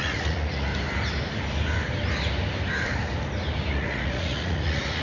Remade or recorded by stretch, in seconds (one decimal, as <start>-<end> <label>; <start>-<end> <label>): 0.0-0.7 remade; 0.7-3.7 recorded; 3.7-5.0 remade

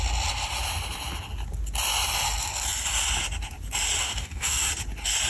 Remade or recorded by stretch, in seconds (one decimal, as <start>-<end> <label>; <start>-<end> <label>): 0.0-4.0 recorded; 4.0-4.7 remade; 4.7-5.3 recorded

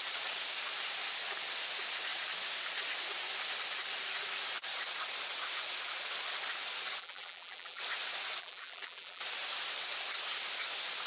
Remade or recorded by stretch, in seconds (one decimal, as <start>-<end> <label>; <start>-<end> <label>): 0.0-7.0 recorded; 7.0-7.8 remade; 7.8-8.4 recorded; 8.4-9.2 remade; 9.2-11.1 recorded

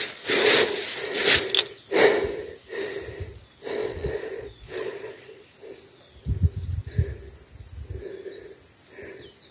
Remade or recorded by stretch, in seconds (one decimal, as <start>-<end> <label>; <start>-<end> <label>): 0.0-3.8 recorded; 3.8-5.4 remade; 5.4-9.5 recorded

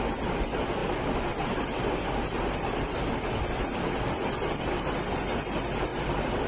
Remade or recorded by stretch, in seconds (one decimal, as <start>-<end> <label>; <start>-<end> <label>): 0.0-0.8 recorded; 0.8-4.7 remade; 4.7-5.9 recorded; 5.9-6.5 remade

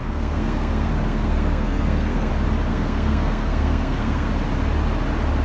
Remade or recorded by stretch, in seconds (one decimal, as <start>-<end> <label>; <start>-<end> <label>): 0.0-2.3 remade; 2.3-2.7 recorded; 2.7-4.3 remade; 4.3-5.4 recorded